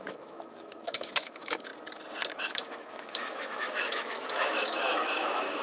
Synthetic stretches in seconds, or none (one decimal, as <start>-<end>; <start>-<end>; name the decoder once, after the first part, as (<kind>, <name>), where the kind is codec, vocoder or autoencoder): 0.0-1.7 (autoencoder, DAC-VAE); 2.4-5.6